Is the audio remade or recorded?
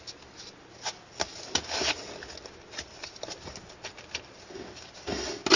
recorded